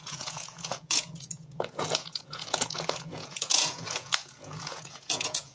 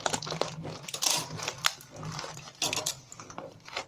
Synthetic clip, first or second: first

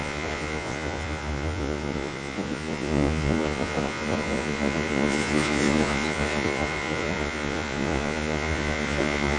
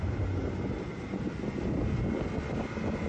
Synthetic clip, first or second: first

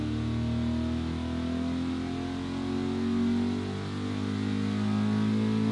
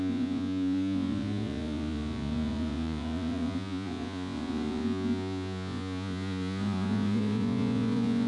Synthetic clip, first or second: second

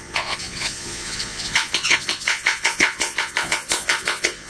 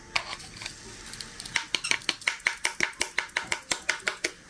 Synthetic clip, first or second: first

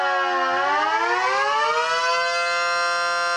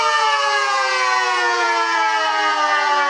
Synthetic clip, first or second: second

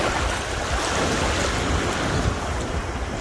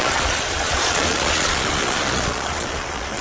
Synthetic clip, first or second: second